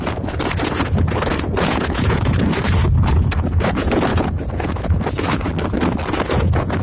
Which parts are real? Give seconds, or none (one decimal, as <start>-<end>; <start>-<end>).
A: 5.5-6.1